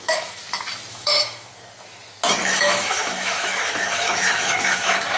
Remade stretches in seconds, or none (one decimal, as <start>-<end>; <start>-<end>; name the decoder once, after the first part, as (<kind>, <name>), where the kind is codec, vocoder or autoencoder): 0.0-0.4 (autoencoder, DAC-VAE); 0.9-1.5; 2.4-5.2